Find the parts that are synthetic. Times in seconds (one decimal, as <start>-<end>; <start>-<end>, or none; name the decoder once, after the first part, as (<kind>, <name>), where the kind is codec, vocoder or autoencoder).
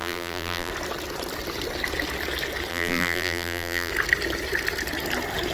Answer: 0.0-0.7 (vocoder, BigVGAN v2); 2.7-3.9